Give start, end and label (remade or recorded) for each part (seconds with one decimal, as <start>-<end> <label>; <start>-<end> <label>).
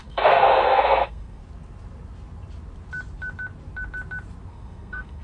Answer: 0.0-1.4 remade; 1.4-4.5 recorded; 4.5-5.2 remade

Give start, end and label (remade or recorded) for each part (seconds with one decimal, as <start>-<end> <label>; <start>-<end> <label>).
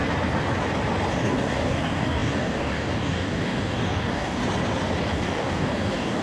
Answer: 0.0-1.1 recorded; 1.1-4.4 remade; 4.4-5.0 recorded; 5.0-6.2 remade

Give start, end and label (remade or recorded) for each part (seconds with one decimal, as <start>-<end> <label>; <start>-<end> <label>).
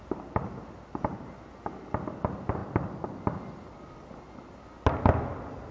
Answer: 0.0-5.7 recorded